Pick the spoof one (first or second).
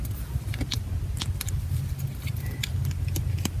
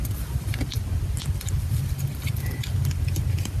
second